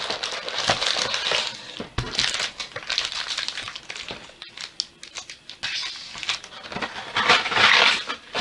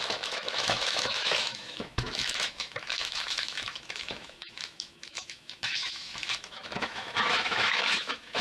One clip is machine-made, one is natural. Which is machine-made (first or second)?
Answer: second